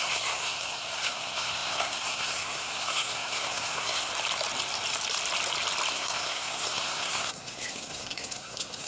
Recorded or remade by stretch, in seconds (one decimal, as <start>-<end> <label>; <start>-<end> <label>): 0.0-4.1 remade; 4.1-5.9 recorded; 5.9-8.9 remade